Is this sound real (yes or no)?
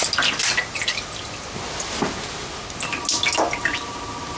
yes